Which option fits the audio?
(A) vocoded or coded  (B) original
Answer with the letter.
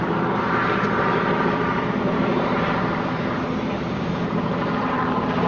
A